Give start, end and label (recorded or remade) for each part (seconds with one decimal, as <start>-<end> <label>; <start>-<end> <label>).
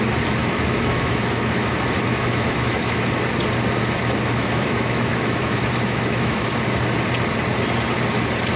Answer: 0.0-0.4 recorded; 0.4-1.7 remade; 1.7-2.1 recorded; 2.1-3.0 remade; 3.0-4.0 recorded; 4.0-6.5 remade; 6.5-8.6 recorded